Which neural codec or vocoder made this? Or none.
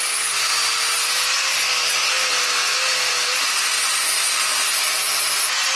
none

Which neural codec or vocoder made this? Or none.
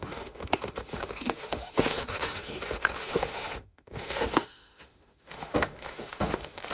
autoencoder, DAC-VAE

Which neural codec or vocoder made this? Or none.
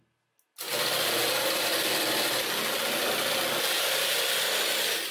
none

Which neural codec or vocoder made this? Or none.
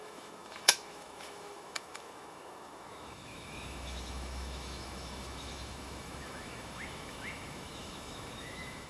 autoencoder, DAC-VAE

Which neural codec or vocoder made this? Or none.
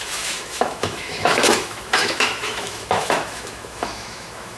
autoencoder, DAC-VAE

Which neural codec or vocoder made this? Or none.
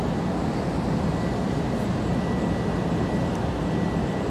none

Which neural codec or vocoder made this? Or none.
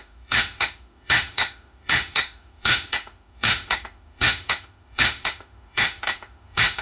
autoencoder, DAC-VAE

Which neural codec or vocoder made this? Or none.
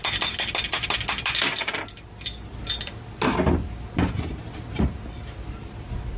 none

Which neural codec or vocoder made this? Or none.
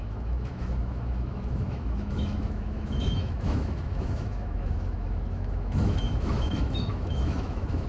autoencoder, DAC-VAE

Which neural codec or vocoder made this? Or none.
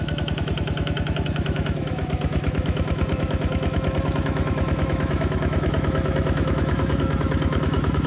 autoencoder, DAC-VAE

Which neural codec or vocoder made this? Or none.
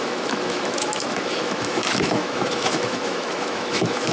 autoencoder, DAC-VAE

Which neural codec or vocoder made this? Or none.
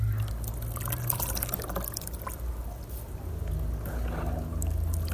none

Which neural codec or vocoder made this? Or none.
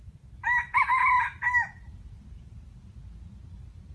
none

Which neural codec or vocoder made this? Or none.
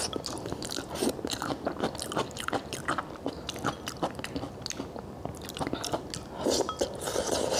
none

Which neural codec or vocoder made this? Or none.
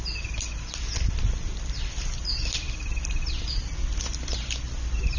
none